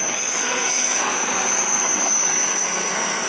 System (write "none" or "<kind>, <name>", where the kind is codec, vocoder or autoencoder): codec, SNAC